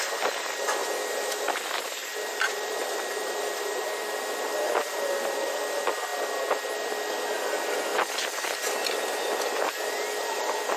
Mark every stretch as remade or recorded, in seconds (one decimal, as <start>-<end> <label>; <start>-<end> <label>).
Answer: 0.0-2.0 recorded; 2.0-3.9 remade; 3.9-10.8 recorded

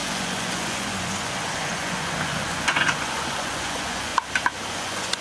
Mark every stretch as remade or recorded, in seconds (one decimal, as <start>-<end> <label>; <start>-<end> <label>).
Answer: 0.0-4.1 remade; 4.1-4.7 recorded; 4.7-5.2 remade